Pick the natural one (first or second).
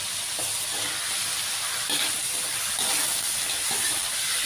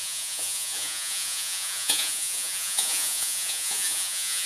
first